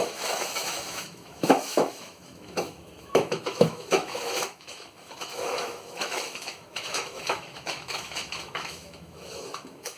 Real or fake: fake